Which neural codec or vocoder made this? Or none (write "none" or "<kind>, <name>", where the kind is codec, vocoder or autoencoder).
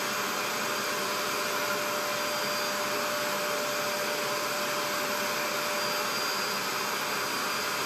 none